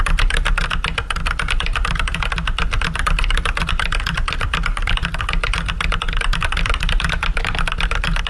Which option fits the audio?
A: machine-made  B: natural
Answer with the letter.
B